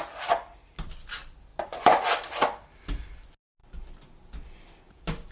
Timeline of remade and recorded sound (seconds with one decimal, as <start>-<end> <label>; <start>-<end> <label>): 0.0-5.3 recorded